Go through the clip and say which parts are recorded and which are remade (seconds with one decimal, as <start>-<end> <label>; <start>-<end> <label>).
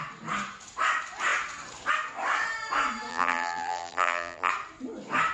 0.0-3.1 recorded; 3.1-4.5 remade; 4.5-5.3 recorded